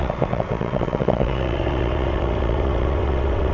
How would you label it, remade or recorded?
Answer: remade